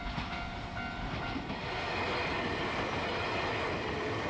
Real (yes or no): yes